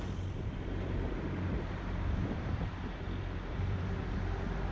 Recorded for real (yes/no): no